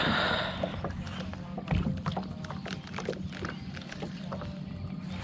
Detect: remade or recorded recorded